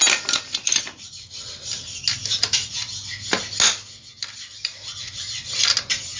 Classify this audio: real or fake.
real